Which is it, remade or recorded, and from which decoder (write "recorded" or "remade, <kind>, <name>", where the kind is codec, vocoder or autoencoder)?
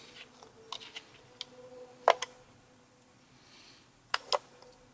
recorded